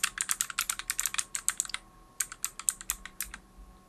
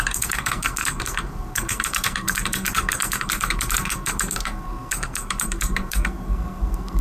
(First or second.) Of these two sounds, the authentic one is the first